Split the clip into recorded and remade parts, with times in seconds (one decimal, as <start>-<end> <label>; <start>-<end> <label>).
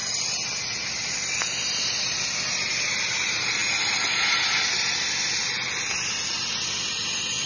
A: 0.0-7.5 recorded